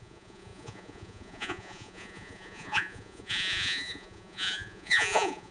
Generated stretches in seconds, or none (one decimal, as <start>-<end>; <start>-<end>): 0.0-5.5